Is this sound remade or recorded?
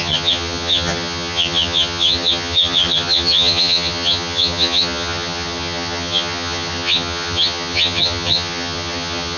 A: remade